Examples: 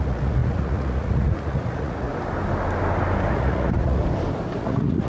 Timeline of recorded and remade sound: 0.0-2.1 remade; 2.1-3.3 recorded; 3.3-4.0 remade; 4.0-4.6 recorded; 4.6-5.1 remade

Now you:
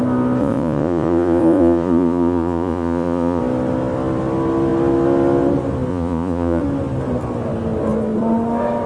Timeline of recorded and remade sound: 0.0-0.4 recorded; 0.4-3.4 remade; 3.4-5.9 recorded; 5.9-6.6 remade; 6.6-8.9 recorded

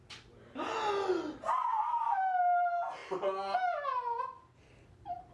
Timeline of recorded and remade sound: 0.0-5.3 recorded

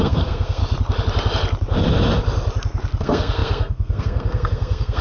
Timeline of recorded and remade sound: 0.0-0.6 remade; 0.6-3.0 recorded; 3.0-5.0 remade

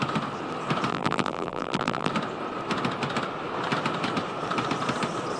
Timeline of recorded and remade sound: 0.0-0.9 recorded; 0.9-2.1 remade; 2.1-5.4 recorded

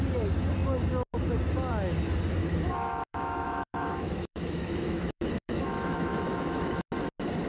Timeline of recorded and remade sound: 0.0-2.4 recorded; 2.4-6.9 remade; 6.9-7.5 recorded

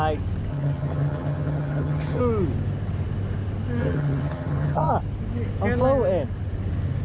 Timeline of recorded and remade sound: 0.0-0.5 recorded; 0.5-2.2 remade; 2.2-3.8 recorded; 3.8-4.9 remade; 4.9-7.0 recorded

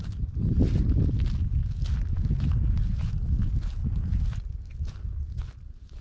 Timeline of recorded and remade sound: 0.0-6.0 recorded